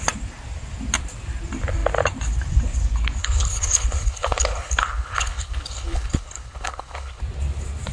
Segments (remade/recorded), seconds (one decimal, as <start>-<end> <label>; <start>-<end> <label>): 0.0-3.2 recorded; 3.2-7.2 remade; 7.2-7.9 recorded